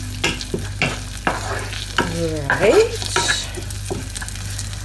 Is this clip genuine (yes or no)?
yes